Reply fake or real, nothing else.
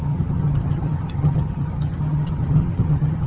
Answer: fake